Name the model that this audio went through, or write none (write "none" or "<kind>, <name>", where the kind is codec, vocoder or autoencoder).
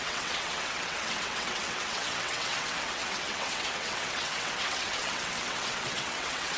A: vocoder, WaveNeXt